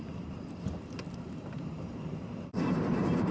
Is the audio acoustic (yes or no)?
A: no